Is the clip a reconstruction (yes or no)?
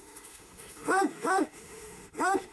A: yes